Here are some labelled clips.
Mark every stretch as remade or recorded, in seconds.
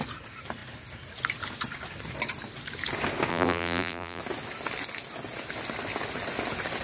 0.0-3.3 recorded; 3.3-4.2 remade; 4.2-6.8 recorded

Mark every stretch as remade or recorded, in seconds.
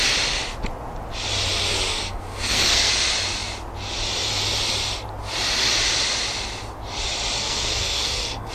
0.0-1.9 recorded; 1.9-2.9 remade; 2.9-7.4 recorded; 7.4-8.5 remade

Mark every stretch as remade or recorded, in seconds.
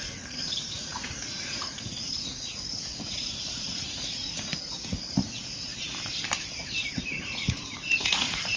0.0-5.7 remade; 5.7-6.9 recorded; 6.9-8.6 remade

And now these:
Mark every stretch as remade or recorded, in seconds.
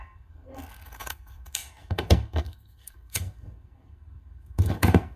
0.0-5.2 remade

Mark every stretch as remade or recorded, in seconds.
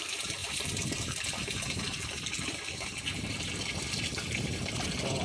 0.0-5.2 remade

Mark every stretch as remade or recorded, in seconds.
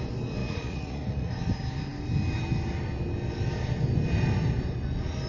0.0-0.4 recorded; 0.4-1.3 remade; 1.3-5.3 recorded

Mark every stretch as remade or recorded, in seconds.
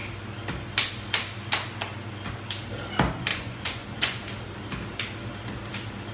0.0-3.3 recorded; 3.3-4.2 remade; 4.2-6.1 recorded